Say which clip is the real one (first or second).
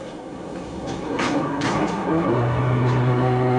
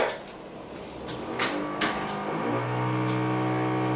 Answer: second